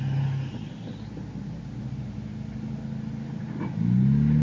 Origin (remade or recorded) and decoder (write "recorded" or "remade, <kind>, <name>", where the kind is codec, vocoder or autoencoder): recorded